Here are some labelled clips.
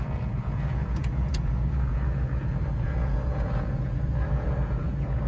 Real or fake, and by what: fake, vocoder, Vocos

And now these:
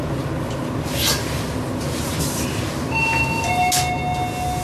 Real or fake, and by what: real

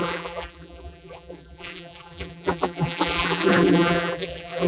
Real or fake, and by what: fake, vocoder, BigVGAN v2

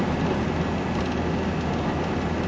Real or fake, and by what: real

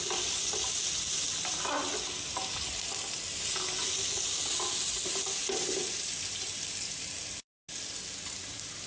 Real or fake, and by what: real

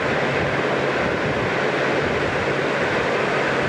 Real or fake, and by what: real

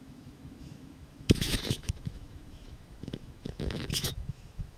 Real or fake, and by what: fake, autoencoder, DAC-VAE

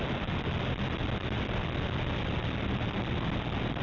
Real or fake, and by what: real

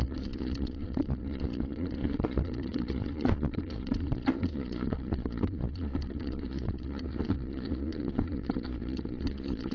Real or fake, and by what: fake, vocoder, Vocos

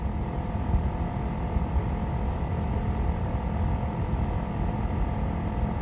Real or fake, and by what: real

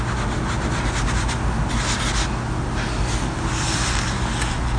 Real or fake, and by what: real